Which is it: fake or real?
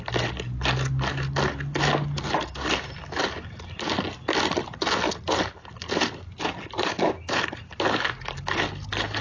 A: real